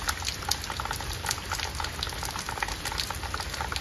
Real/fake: real